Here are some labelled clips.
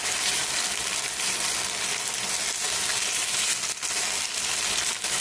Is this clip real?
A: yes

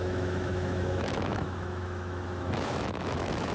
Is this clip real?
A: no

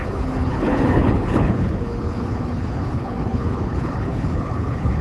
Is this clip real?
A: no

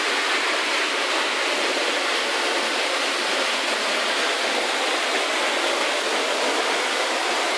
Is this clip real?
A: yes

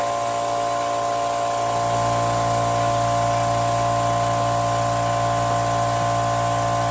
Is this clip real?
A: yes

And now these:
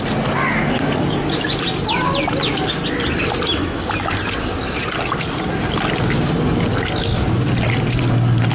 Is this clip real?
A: yes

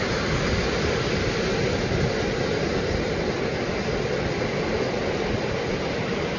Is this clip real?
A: yes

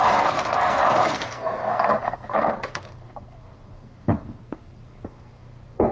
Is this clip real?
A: no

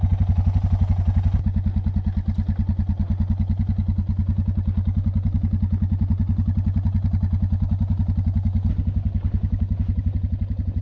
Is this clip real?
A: yes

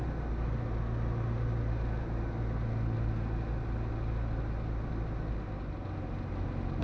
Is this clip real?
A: yes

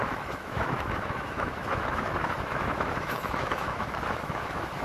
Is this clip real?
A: no